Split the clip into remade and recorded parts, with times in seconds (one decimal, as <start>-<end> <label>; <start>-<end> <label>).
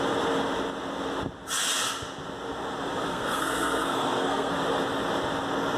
0.0-3.1 recorded; 3.1-4.5 remade; 4.5-5.8 recorded